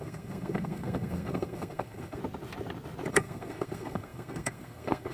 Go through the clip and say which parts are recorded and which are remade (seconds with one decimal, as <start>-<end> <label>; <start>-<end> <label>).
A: 0.0-2.2 remade; 2.2-3.1 recorded; 3.1-5.1 remade